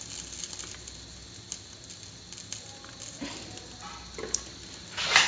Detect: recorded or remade recorded